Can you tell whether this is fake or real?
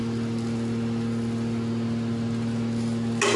real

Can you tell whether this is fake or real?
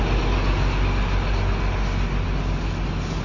real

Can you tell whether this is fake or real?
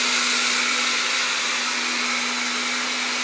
real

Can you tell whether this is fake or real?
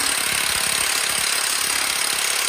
real